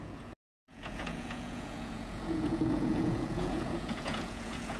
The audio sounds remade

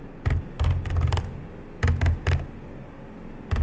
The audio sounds recorded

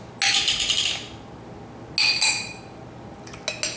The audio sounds recorded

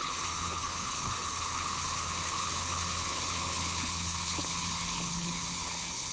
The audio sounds remade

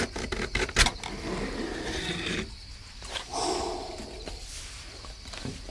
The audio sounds recorded